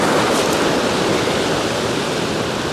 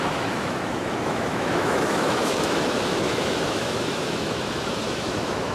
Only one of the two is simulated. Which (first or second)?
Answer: second